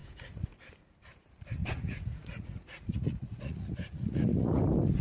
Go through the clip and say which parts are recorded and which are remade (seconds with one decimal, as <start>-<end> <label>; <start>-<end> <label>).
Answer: 0.0-0.5 remade; 0.5-1.6 recorded; 1.6-4.6 remade; 4.6-5.0 recorded